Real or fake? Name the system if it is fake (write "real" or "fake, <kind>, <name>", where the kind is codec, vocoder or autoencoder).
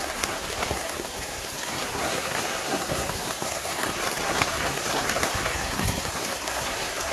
fake, codec, SNAC